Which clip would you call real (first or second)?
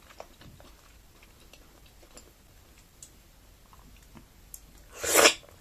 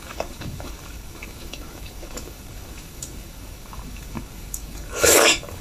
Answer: first